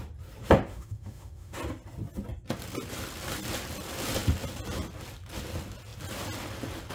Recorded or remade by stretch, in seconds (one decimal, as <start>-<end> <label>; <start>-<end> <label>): 0.0-0.7 recorded; 0.7-1.6 remade; 1.6-6.9 recorded